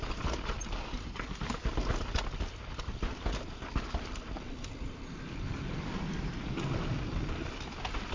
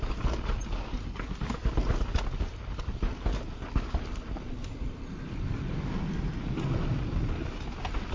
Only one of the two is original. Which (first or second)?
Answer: second